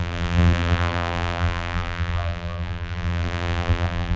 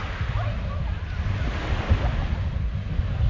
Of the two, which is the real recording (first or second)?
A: second